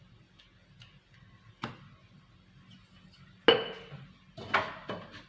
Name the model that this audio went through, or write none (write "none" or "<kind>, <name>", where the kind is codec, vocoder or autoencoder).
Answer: none